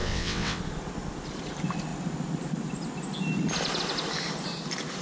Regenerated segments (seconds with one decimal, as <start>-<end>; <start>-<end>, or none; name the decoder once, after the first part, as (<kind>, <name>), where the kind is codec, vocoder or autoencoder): 0.0-0.6 (vocoder, WaveNeXt)